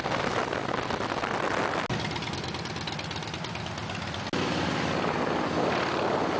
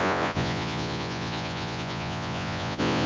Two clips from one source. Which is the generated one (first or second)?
second